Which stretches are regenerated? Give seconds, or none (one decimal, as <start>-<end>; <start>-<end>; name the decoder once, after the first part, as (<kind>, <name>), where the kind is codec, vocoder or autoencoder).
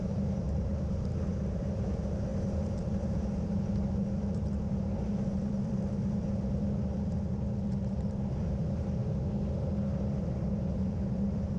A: 0.0-0.7 (vocoder, BigVGAN v2); 1.4-9.0; 10.5-11.6